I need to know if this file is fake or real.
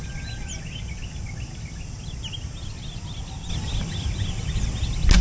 real